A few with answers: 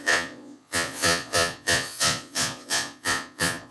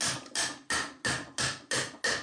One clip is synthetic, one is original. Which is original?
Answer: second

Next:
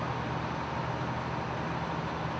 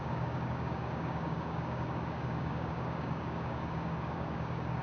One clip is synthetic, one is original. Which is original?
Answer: first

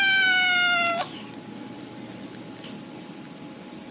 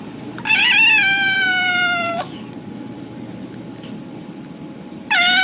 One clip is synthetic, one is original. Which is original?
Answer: first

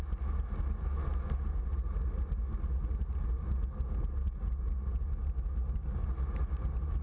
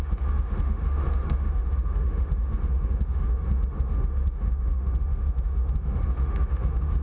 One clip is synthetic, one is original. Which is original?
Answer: first